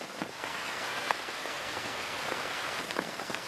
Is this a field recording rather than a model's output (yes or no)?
no